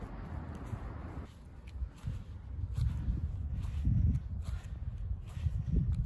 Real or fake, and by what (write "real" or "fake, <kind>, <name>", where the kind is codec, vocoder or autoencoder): real